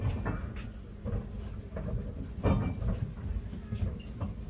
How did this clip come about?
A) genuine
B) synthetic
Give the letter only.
A